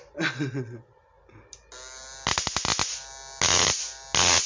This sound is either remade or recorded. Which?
recorded